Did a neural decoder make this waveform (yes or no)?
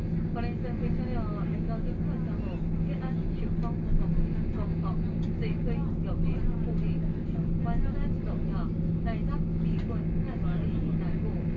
no